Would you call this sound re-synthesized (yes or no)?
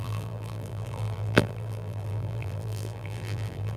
yes